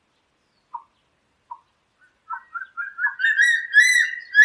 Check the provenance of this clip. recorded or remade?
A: recorded